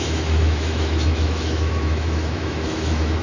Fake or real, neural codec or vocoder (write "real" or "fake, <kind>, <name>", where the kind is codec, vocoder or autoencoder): fake, autoencoder, DAC-VAE